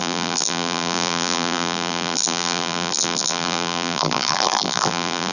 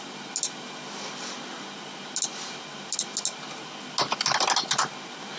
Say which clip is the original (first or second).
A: second